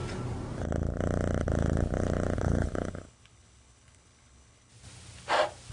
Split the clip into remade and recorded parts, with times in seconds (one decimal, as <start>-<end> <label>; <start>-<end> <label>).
0.0-2.4 recorded; 2.4-4.7 remade; 4.7-5.7 recorded